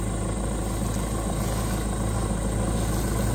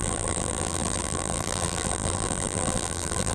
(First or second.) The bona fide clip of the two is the first